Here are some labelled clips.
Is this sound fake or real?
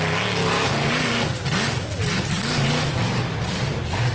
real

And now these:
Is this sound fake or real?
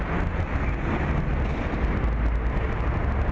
real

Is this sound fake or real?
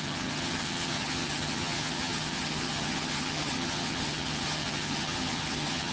fake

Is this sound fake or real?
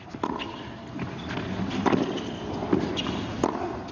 real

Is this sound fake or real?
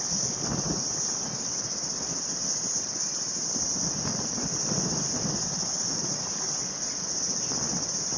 real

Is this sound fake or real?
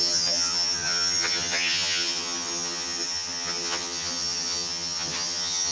fake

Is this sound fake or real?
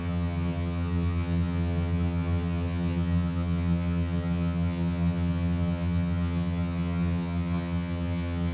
fake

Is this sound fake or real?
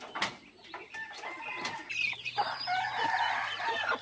real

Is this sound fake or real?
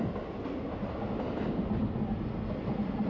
real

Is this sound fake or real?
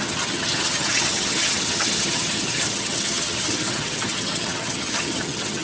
fake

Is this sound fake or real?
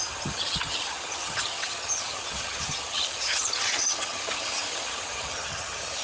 fake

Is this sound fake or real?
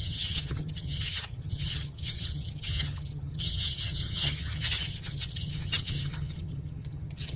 fake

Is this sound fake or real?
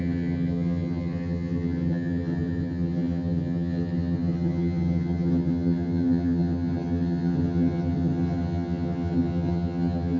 fake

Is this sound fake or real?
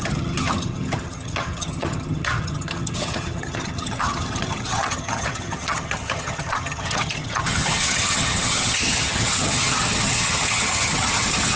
fake